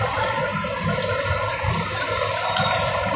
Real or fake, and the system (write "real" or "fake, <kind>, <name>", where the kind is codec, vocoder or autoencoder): real